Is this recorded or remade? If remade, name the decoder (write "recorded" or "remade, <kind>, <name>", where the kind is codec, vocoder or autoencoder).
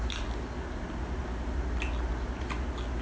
recorded